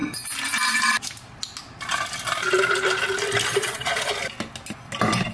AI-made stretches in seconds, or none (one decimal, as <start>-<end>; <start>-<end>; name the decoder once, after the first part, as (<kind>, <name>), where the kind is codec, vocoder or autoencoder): 3.5-4.1 (vocoder, Vocos)